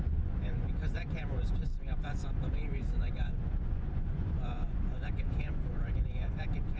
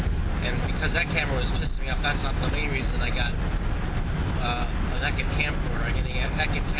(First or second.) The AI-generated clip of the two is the first